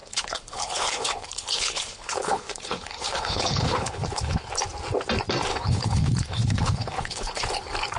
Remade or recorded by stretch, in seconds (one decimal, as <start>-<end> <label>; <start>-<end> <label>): 0.0-4.5 remade; 4.5-5.5 recorded; 5.5-7.5 remade; 7.5-8.0 recorded